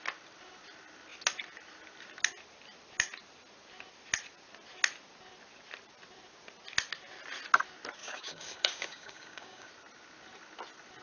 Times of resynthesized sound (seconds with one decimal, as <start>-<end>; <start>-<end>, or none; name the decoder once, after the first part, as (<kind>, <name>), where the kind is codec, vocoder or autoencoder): 8.0-9.7 (codec, DAC)